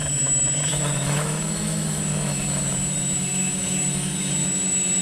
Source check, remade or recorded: remade